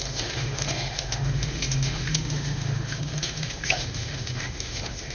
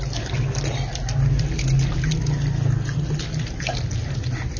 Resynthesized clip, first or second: first